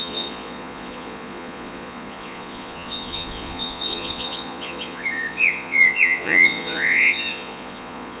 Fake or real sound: fake